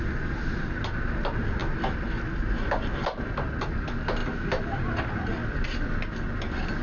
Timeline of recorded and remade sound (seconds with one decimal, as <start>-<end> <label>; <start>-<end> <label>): 0.0-4.2 recorded; 4.2-5.2 remade; 5.2-6.8 recorded